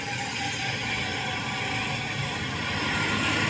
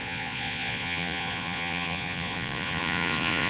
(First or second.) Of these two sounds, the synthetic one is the second